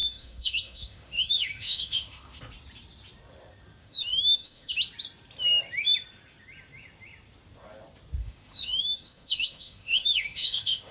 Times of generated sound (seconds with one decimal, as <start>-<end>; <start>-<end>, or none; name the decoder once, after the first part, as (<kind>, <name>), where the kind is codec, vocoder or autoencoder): 0.0-2.4 (autoencoder, DAC-VAE); 3.8-4.7; 8.2-10.9